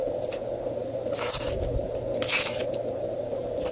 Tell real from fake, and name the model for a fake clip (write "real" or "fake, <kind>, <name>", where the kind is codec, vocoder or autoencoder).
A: real